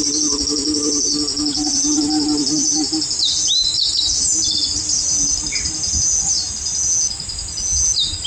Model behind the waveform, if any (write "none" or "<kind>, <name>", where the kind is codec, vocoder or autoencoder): none